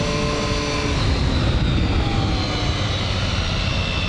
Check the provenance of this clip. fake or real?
real